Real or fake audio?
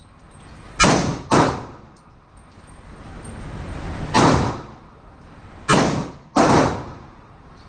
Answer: real